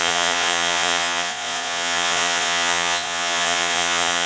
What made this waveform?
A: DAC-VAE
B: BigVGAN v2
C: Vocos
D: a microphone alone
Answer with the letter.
C